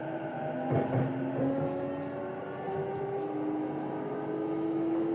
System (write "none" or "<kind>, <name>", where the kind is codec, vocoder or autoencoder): none